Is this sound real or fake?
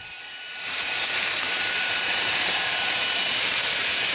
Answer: fake